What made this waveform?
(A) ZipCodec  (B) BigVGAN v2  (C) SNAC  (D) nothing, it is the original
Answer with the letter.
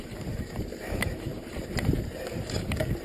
B